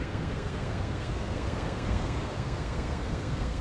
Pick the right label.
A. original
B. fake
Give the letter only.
B